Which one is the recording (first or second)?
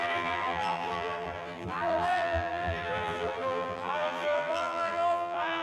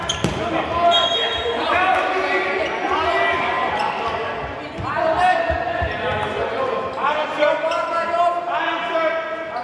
second